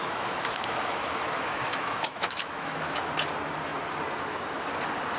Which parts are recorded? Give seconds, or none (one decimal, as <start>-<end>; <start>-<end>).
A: 3.1-5.2